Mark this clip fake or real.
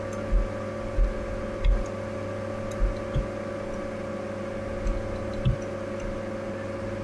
real